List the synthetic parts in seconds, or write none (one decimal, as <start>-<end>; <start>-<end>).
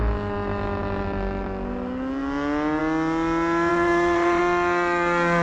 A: 3.7-4.4